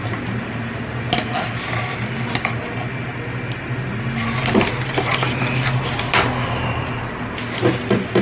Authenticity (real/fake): real